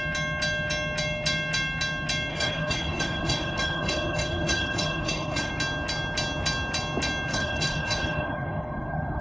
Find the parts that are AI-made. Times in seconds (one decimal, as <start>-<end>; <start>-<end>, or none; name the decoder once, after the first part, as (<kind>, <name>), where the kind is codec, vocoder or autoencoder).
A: 2.3-5.5 (codec, HILCodec); 7.3-9.2